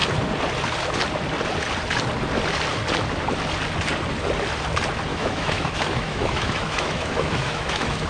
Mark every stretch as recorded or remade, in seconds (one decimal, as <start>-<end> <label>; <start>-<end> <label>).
0.0-5.1 recorded; 5.1-8.1 remade